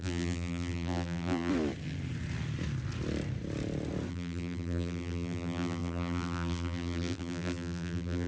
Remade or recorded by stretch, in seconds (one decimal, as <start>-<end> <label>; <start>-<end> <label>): 0.0-1.5 remade; 1.5-4.1 recorded; 4.1-8.3 remade